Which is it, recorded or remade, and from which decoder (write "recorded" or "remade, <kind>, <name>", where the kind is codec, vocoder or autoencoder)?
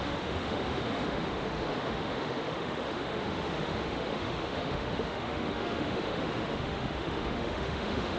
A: remade, autoencoder, DAC-VAE